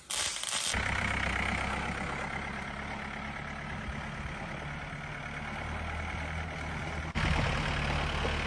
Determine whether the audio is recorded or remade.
recorded